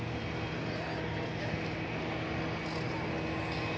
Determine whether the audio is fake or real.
real